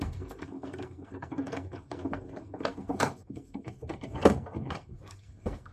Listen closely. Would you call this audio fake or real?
fake